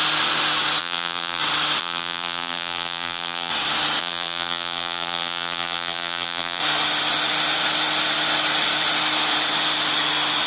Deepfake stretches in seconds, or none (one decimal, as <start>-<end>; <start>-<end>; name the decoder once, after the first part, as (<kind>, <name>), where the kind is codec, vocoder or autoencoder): 0.8-1.4 (vocoder, BigVGAN v2); 1.8-3.5; 4.0-6.6